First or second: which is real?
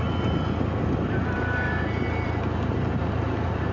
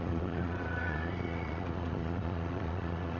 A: first